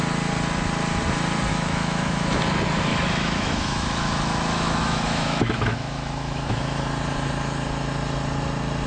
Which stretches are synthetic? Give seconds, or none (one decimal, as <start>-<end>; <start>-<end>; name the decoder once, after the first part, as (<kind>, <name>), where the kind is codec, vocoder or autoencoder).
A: 1.5-2.4 (autoencoder, DAC-VAE); 2.9-6.8